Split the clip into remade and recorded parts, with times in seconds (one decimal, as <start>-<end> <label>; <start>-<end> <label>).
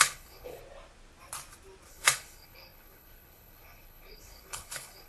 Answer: 0.0-0.6 remade; 0.6-1.9 recorded; 1.9-5.1 remade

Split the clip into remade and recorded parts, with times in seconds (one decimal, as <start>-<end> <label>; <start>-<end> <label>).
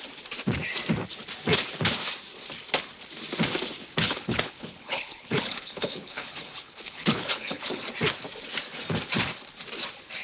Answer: 0.0-4.0 recorded; 4.0-7.8 remade; 7.8-10.2 recorded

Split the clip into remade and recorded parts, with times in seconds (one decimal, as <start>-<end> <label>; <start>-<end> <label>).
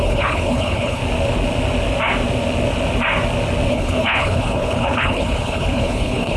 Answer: 0.0-1.0 remade; 1.0-3.7 recorded; 3.7-6.4 remade